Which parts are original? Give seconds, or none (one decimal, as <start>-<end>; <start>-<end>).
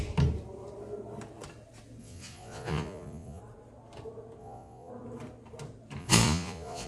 0.0-2.0; 3.4-4.4; 4.9-6.0